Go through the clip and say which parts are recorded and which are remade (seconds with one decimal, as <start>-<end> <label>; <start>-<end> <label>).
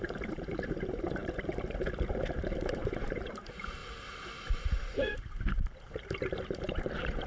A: 0.0-3.8 remade; 3.8-4.6 recorded; 4.6-7.3 remade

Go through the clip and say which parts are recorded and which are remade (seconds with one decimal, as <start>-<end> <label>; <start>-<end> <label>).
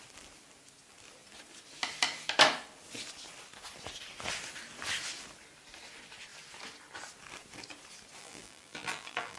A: 0.0-8.2 recorded; 8.2-9.4 remade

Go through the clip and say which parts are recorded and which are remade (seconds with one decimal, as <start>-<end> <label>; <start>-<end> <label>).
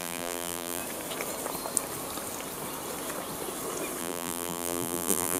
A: 0.0-0.8 remade; 0.8-4.0 recorded; 4.0-5.4 remade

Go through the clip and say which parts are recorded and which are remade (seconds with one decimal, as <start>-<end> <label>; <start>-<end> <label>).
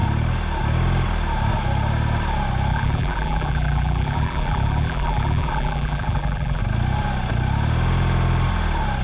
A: 0.0-2.7 recorded; 2.7-6.6 remade; 6.6-9.0 recorded